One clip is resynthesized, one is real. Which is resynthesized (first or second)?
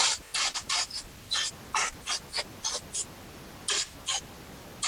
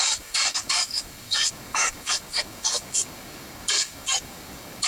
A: second